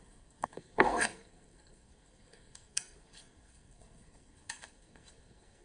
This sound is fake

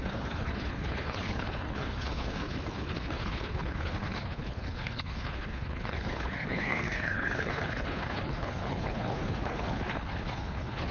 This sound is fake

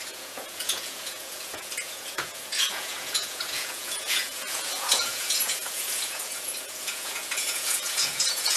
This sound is fake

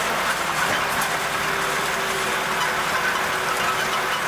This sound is real